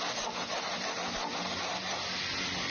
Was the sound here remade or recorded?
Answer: recorded